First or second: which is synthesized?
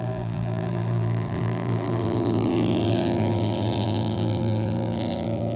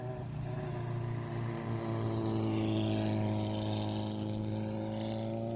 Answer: first